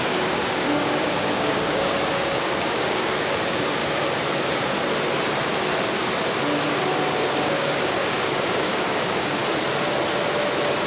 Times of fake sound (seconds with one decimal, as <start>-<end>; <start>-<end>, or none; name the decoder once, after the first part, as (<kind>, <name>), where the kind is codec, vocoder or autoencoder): 0.0-3.8 (codec, DAC); 7.4-9.4